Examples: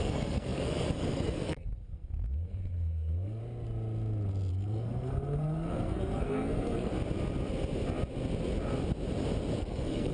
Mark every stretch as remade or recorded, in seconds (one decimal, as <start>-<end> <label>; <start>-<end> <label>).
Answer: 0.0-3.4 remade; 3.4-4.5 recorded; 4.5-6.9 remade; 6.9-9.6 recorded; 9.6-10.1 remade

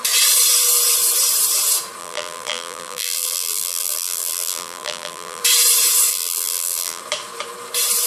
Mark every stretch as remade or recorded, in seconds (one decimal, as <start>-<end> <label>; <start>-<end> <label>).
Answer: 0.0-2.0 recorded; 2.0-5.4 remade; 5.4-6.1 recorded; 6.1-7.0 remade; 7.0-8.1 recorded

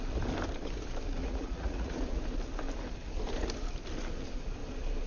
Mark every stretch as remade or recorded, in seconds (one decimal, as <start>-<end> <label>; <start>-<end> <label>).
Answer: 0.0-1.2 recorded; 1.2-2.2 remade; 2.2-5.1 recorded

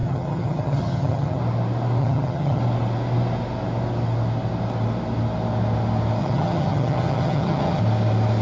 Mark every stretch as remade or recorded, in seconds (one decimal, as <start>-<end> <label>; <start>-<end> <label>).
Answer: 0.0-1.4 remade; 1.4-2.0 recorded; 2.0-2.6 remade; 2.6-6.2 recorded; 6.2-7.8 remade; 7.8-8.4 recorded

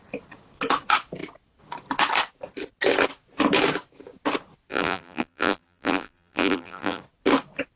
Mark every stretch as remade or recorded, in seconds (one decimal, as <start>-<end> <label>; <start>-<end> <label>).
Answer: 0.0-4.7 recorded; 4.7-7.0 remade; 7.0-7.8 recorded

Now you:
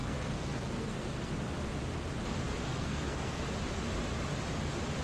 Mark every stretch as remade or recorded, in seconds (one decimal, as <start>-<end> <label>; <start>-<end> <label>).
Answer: 0.0-1.3 remade; 1.3-2.6 recorded; 2.6-3.4 remade; 3.4-5.0 recorded

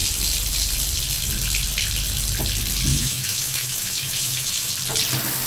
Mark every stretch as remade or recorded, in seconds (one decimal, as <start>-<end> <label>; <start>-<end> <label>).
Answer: 0.0-2.9 recorded; 2.9-4.7 remade; 4.7-5.5 recorded